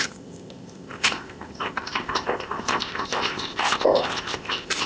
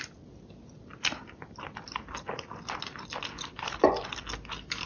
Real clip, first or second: second